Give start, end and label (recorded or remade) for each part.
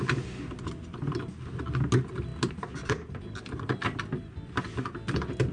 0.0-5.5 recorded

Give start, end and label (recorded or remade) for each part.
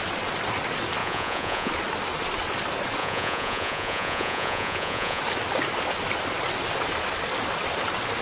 0.0-1.0 recorded; 1.0-1.7 remade; 1.7-3.0 recorded; 3.0-5.2 remade; 5.2-8.2 recorded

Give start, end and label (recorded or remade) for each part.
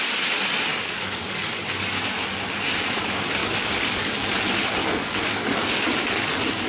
0.0-0.7 recorded; 0.7-1.5 remade; 1.5-3.4 recorded; 3.4-4.3 remade; 4.3-4.8 recorded; 4.8-5.7 remade; 5.7-6.7 recorded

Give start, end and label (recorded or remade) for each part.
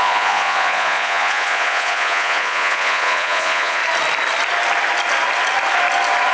0.0-3.8 remade; 3.8-6.3 recorded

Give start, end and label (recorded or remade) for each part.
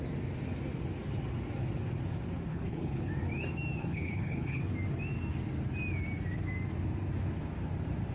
0.0-2.5 recorded; 2.5-3.1 remade; 3.1-3.8 recorded; 3.8-4.6 remade; 4.6-8.1 recorded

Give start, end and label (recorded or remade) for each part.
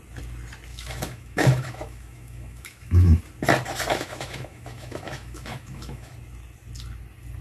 0.0-0.7 recorded; 0.7-3.2 remade; 3.2-3.9 recorded; 3.9-6.1 remade; 6.1-7.4 recorded